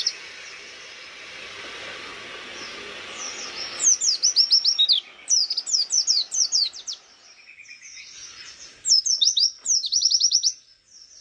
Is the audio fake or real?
real